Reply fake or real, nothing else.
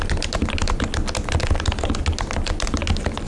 real